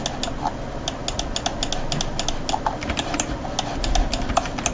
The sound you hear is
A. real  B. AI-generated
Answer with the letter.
A